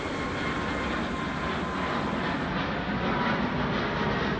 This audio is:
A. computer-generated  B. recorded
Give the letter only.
B